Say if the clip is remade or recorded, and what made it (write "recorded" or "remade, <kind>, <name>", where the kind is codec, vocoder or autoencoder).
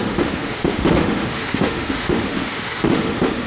remade, autoencoder, DAC-VAE